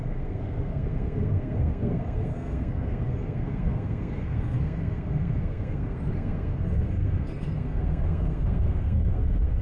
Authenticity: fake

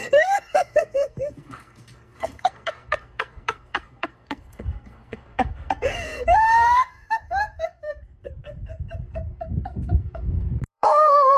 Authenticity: fake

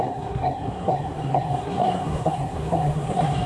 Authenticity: fake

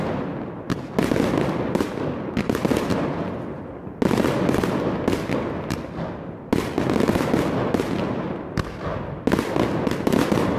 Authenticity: real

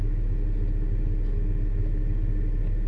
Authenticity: real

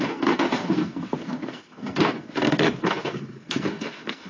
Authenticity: fake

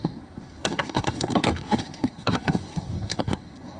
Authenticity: fake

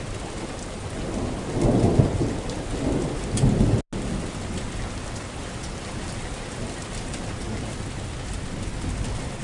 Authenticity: real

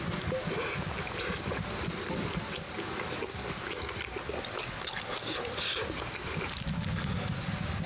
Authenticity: real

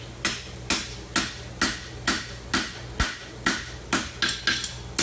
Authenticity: real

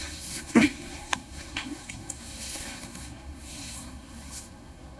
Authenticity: fake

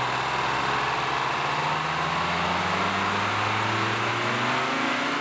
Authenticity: real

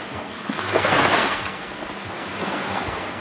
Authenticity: fake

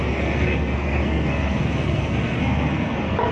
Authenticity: fake